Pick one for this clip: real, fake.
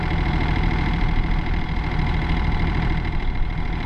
fake